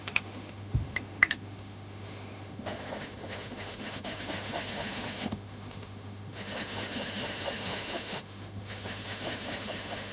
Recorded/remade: remade